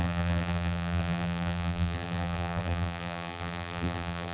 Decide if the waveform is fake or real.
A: fake